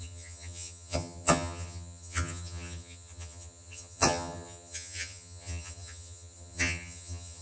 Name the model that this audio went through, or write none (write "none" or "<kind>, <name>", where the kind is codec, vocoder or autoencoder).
vocoder, HiFi-GAN